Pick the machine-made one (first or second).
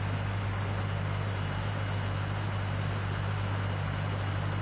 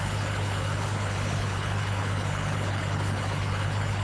second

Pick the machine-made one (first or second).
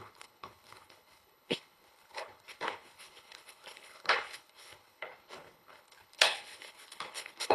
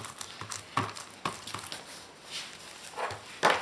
first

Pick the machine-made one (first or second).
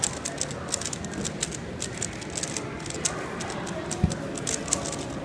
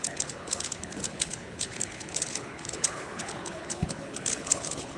second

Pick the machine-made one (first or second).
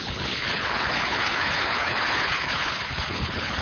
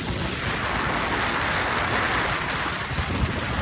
first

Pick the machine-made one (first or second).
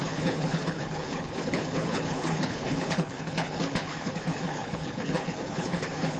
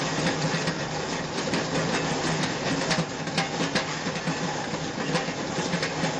first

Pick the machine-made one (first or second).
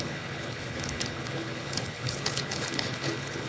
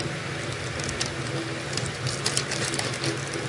first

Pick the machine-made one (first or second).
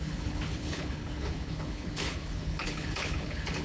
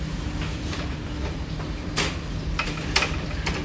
first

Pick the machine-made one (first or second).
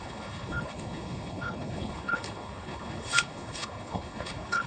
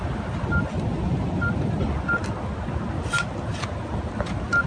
first